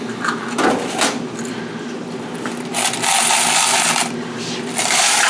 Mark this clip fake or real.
real